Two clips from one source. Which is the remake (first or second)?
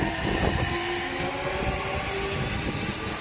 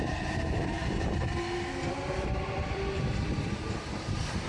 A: second